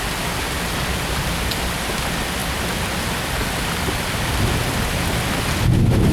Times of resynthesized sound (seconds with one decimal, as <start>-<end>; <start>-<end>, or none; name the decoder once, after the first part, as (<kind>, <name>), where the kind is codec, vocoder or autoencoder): 2.4-4.9 (vocoder, BigVGAN v2)